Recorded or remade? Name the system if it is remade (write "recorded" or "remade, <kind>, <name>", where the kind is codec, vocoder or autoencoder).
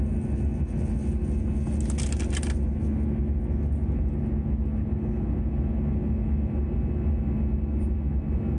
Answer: recorded